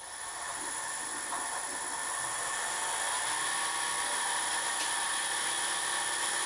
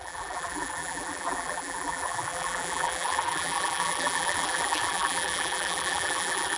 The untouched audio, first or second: first